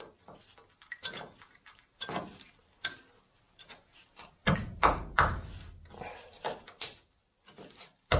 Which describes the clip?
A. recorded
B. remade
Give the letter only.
A